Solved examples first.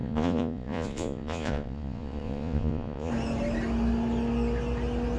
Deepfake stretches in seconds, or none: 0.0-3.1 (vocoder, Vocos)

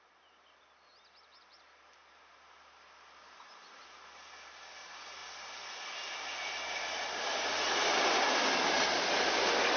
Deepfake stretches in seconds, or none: none